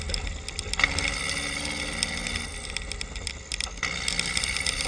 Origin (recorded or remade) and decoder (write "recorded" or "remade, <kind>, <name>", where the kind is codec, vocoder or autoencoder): recorded